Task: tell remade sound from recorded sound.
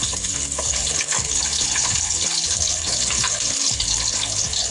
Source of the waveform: remade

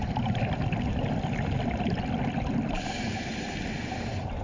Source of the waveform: recorded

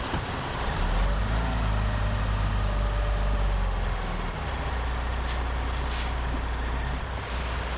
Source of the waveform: recorded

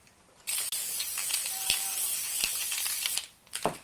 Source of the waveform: remade